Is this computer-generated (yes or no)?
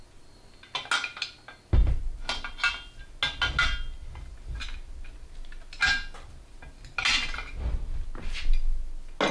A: no